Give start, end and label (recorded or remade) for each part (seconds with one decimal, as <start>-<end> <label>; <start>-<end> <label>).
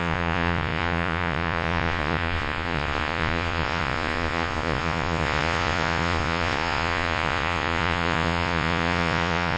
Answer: 0.0-9.6 remade